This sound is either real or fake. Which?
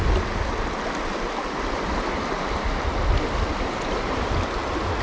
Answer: real